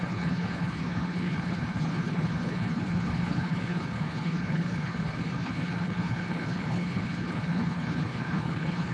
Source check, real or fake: fake